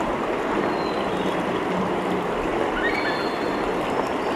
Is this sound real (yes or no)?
yes